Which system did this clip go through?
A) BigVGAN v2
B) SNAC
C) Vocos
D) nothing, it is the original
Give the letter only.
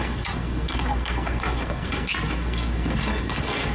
B